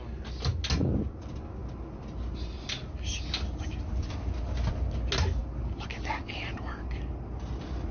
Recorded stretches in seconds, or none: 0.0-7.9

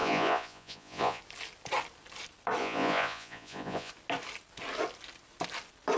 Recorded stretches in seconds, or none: 1.2-2.6; 3.9-6.0

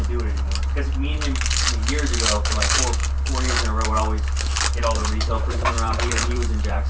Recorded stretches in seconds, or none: 0.0-5.0

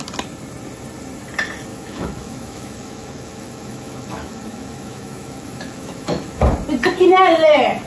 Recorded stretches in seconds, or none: 0.0-1.7; 6.4-7.9

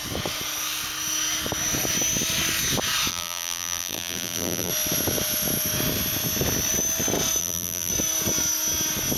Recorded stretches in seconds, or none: 0.0-3.1; 4.7-7.4; 7.9-9.2